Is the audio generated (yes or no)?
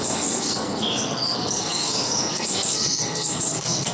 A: yes